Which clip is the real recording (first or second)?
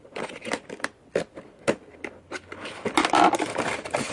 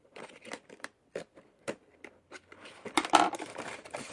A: first